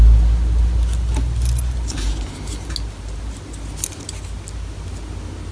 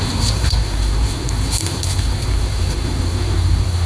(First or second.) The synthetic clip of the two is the second